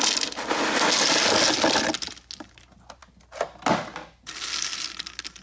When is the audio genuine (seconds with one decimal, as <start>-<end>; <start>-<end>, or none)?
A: 0.0-5.4